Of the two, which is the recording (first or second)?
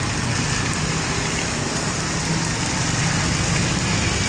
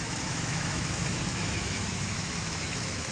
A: first